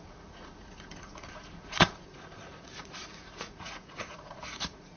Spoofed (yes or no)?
yes